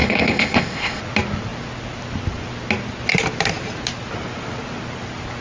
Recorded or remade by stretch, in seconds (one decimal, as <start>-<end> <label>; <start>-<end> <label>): 0.0-1.0 remade; 1.0-5.4 recorded